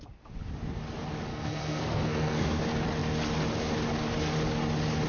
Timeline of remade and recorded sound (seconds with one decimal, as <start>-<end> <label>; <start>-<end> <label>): 0.0-1.3 recorded; 1.3-2.6 remade; 2.6-5.1 recorded